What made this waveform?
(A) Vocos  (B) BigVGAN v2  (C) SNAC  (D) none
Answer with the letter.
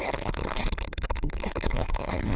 C